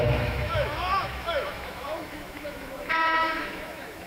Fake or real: fake